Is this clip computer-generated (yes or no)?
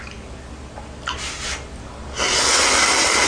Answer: no